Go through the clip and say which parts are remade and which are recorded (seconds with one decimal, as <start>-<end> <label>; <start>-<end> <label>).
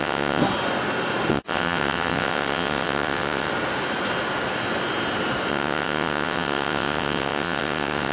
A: 0.0-0.4 remade; 0.4-1.3 recorded; 1.3-3.5 remade; 3.5-5.5 recorded; 5.5-8.1 remade